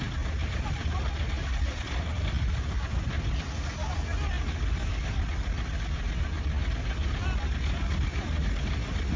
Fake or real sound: real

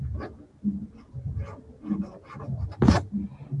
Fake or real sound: real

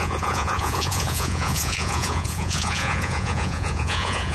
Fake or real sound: fake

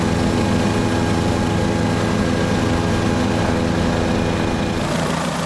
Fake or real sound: real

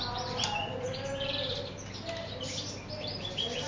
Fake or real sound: real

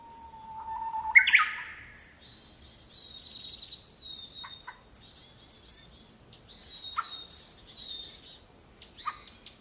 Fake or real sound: real